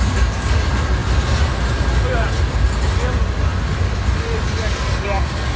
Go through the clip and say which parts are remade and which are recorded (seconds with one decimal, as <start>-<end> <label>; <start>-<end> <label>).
0.0-5.6 recorded